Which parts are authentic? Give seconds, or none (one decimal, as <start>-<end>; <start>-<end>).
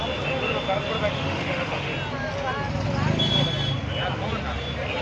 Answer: 0.0-1.1; 1.9-5.0